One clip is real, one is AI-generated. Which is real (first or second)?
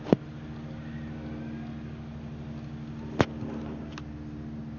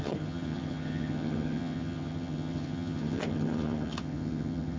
first